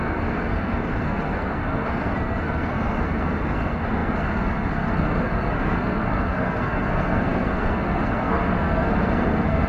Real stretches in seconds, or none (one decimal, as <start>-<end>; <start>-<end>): none